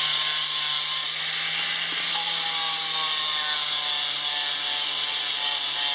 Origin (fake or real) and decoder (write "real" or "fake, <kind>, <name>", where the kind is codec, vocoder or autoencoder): real